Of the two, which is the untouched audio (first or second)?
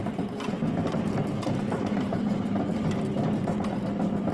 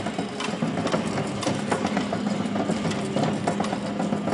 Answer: second